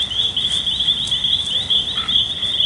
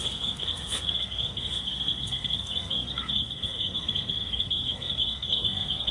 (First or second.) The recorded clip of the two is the first